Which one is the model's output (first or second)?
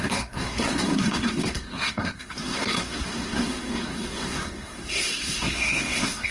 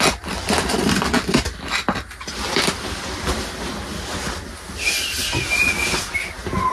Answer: first